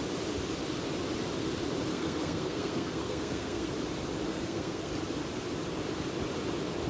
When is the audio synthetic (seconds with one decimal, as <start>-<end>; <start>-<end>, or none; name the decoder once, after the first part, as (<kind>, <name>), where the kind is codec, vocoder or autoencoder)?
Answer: 1.9-3.7 (codec, SNAC); 4.3-4.9